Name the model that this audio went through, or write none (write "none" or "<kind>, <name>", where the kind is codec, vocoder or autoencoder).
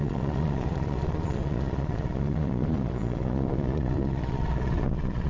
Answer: vocoder, Vocos